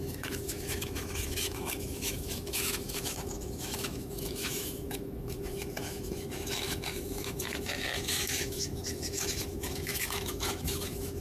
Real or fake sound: fake